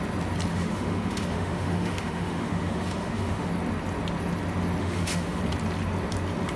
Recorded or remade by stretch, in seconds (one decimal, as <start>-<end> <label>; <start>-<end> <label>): 0.0-0.5 recorded; 0.5-3.5 remade; 3.5-4.8 recorded; 4.8-5.4 remade; 5.4-6.6 recorded